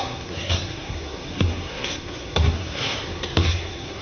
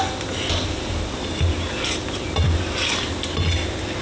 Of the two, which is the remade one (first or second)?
first